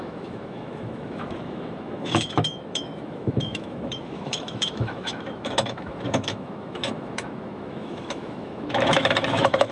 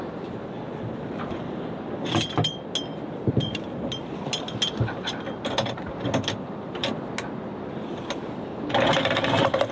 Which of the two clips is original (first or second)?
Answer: second